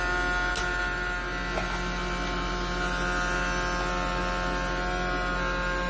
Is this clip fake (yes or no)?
no